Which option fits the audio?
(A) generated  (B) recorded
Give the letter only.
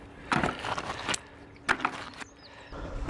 B